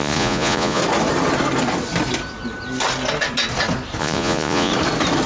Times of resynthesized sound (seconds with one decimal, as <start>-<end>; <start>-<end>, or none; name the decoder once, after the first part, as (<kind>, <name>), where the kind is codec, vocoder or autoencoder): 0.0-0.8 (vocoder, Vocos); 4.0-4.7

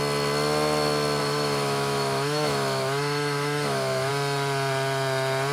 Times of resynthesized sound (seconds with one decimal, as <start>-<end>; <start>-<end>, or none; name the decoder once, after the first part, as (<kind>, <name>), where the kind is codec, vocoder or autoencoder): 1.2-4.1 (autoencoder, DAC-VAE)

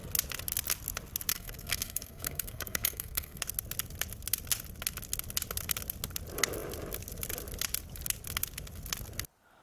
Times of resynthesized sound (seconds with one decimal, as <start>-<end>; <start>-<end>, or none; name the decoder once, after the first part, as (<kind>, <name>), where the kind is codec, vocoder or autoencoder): 1.3-3.4 (codec, SNAC)

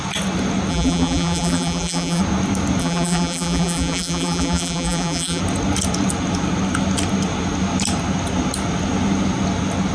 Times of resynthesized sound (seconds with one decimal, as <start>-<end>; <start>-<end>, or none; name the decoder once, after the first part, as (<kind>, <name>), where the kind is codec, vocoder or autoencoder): 0.7-2.2 (vocoder, BigVGAN v2); 2.8-5.4